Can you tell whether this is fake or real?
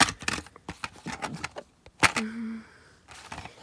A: real